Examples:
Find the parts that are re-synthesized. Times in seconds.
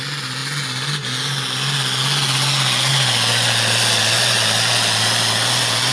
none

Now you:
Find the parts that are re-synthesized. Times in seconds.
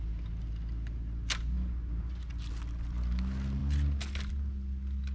none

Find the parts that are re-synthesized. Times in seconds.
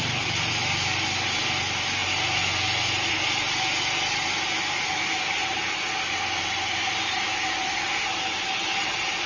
none